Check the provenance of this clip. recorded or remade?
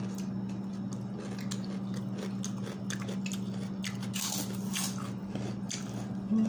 recorded